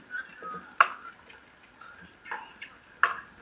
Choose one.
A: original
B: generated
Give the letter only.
A